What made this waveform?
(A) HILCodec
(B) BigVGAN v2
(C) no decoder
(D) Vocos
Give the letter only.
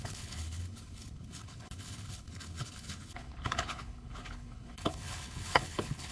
A